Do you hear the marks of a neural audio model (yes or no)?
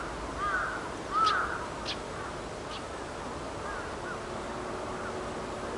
no